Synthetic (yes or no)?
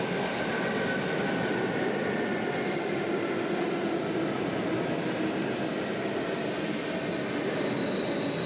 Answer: no